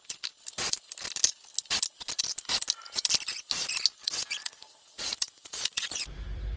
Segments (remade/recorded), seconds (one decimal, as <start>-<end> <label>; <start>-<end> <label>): 0.0-4.0 recorded; 4.0-6.0 remade; 6.0-6.6 recorded